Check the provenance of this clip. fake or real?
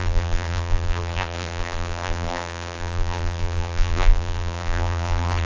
fake